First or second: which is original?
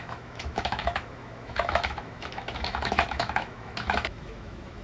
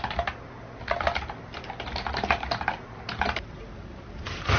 second